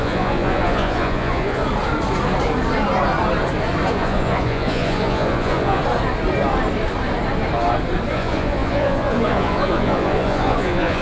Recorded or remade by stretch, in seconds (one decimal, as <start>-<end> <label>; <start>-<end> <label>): 0.0-1.6 remade; 1.6-3.9 recorded; 3.9-5.8 remade; 5.8-8.1 recorded; 8.1-11.0 remade